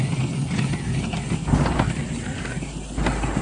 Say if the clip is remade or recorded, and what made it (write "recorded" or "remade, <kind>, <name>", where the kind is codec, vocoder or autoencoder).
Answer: remade, vocoder, BigVGAN v2